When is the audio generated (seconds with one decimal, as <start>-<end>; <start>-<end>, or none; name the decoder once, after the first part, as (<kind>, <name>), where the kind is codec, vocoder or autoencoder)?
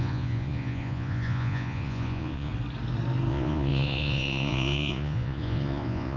0.0-2.5 (vocoder, Vocos); 3.3-6.2